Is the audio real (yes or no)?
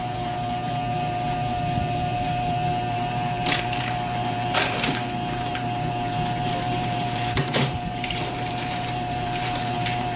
no